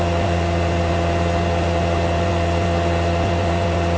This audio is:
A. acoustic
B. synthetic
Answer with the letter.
A